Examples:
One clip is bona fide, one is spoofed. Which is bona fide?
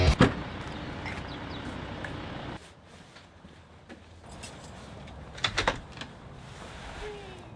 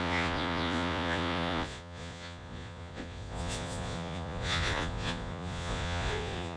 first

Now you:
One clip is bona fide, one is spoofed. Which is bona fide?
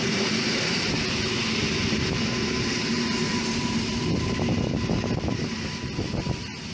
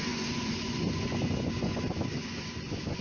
first